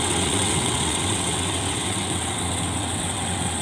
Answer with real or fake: fake